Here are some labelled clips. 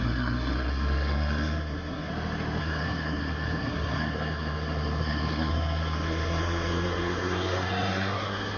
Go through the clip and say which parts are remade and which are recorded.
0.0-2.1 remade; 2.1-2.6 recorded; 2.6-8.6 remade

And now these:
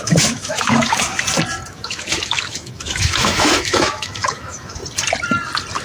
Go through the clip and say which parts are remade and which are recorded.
0.0-1.1 remade; 1.1-1.7 recorded; 1.7-4.8 remade; 4.8-5.8 recorded

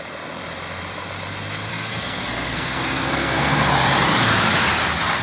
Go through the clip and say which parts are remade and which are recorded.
0.0-1.7 recorded; 1.7-3.7 remade; 3.7-5.2 recorded

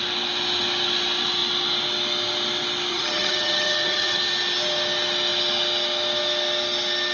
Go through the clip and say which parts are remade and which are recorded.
0.0-2.9 recorded; 2.9-4.2 remade; 4.2-7.1 recorded